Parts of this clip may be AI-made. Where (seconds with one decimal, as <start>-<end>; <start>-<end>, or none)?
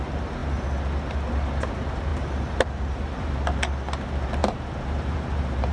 2.1-3.4; 4.4-5.7